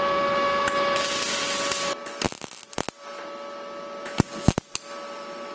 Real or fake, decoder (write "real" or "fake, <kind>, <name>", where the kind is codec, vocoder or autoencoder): real